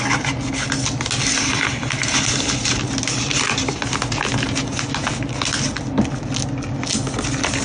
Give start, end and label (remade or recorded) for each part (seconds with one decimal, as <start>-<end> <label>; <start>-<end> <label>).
0.0-7.6 recorded